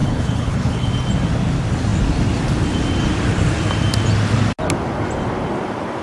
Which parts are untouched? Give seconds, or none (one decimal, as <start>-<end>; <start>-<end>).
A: 0.9-6.0